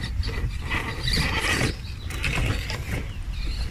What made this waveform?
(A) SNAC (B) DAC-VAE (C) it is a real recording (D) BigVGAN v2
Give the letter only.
C